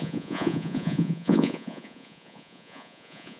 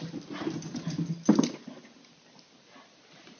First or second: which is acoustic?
second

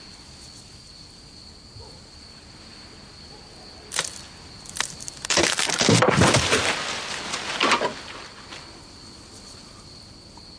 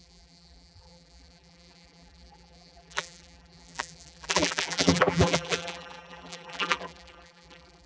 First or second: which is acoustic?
first